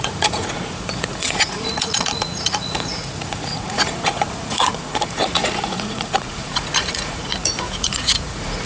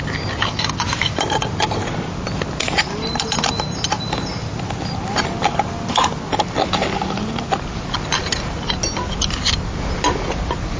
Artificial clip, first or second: first